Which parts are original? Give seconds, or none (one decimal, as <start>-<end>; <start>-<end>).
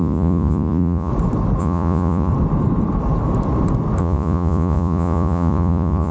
1.1-1.6; 2.3-4.0